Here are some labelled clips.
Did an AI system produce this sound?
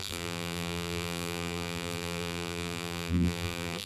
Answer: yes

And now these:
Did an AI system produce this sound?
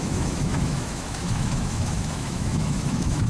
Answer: yes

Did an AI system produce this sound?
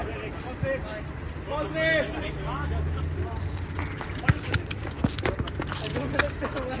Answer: no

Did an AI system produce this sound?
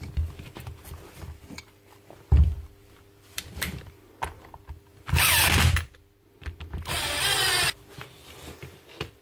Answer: yes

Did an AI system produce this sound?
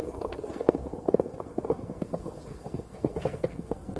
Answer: yes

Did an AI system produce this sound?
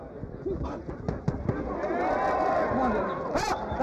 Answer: no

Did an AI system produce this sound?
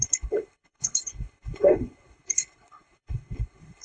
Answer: yes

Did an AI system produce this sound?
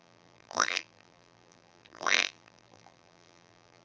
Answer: yes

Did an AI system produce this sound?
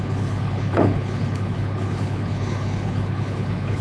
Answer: yes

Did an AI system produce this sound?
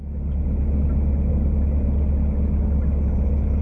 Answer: no